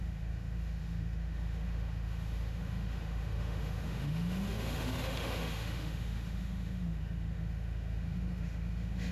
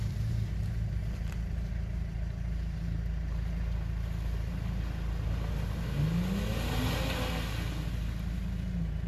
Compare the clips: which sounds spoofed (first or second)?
first